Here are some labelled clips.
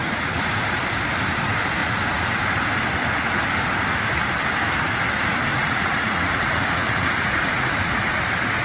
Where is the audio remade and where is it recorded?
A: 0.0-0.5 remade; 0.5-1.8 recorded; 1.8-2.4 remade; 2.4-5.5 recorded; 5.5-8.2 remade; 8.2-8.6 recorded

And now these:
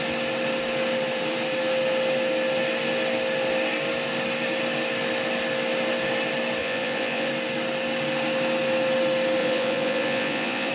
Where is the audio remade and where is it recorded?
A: 0.0-6.6 recorded; 6.6-7.3 remade; 7.3-9.4 recorded; 9.4-10.7 remade

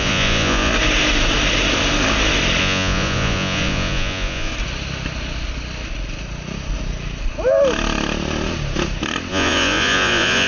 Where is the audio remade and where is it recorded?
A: 0.0-0.7 remade; 0.7-2.6 recorded; 2.6-4.5 remade; 4.5-9.3 recorded; 9.3-10.5 remade

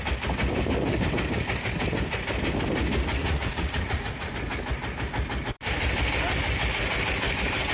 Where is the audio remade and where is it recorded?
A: 0.0-3.2 recorded; 3.2-4.3 remade; 4.3-7.7 recorded

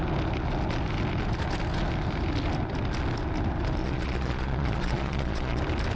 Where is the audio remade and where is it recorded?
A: 0.0-3.8 recorded; 3.8-5.6 remade; 5.6-6.0 recorded